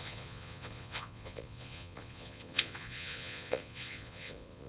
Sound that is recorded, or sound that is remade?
remade